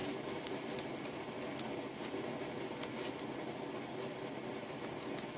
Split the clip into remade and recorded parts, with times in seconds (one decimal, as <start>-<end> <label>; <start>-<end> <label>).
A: 0.0-5.4 recorded